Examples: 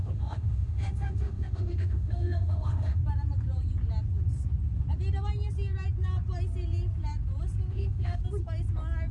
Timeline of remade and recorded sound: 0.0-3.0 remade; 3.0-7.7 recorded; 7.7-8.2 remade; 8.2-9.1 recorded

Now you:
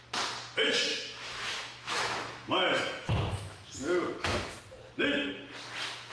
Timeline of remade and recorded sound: 0.0-0.9 recorded; 0.9-4.6 remade; 4.6-6.1 recorded

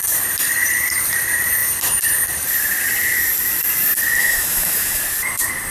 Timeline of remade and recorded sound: 0.0-4.2 recorded; 4.2-5.0 remade; 5.0-5.7 recorded

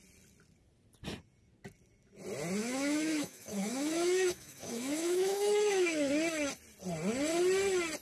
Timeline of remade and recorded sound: 0.0-2.6 recorded; 2.6-6.1 remade; 6.1-8.0 recorded

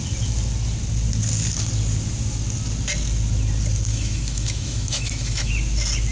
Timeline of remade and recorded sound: 0.0-3.9 recorded; 3.9-5.5 remade; 5.5-6.1 recorded

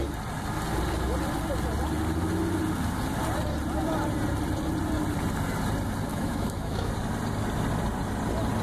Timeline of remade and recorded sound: 0.0-6.1 recorded; 6.1-6.9 remade; 6.9-8.6 recorded

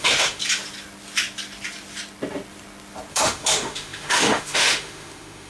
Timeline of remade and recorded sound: 0.0-0.4 remade; 0.4-3.1 recorded; 3.1-5.5 remade